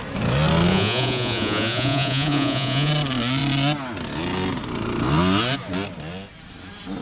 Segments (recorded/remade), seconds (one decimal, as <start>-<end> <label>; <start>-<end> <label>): 0.0-0.7 recorded; 0.7-2.9 remade; 2.9-7.0 recorded

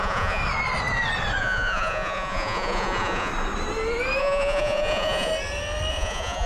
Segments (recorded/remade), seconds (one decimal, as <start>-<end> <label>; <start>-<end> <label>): 0.0-0.4 remade; 0.4-1.4 recorded; 1.4-3.3 remade; 3.3-4.2 recorded; 4.2-5.3 remade; 5.3-5.9 recorded; 5.9-6.5 remade

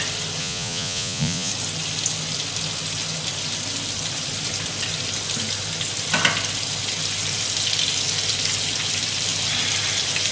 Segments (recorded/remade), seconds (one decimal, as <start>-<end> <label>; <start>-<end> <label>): 0.0-0.4 recorded; 0.4-1.5 remade; 1.5-10.3 recorded

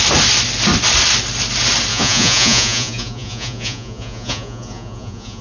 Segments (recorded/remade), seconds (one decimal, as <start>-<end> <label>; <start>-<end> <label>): 0.0-1.9 recorded; 1.9-5.4 remade

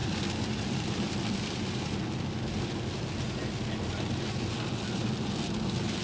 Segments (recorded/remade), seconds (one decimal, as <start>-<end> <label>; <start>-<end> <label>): 0.0-6.0 recorded

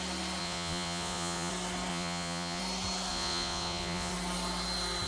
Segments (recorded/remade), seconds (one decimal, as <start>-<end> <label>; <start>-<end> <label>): 0.0-0.4 recorded; 0.4-1.5 remade; 1.5-1.9 recorded; 1.9-2.6 remade; 2.6-3.1 recorded; 3.1-4.1 remade; 4.1-5.1 recorded

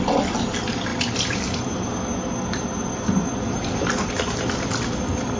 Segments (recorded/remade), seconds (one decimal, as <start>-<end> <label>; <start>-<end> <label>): 0.0-5.4 recorded